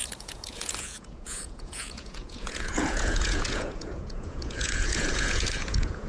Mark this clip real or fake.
fake